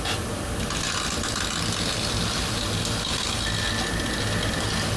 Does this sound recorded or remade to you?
recorded